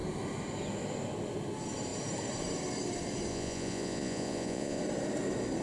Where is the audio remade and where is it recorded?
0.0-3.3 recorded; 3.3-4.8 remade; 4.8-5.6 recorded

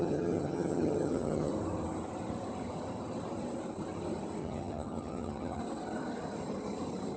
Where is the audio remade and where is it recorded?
0.0-1.5 remade; 1.5-4.4 recorded; 4.4-5.6 remade; 5.6-7.2 recorded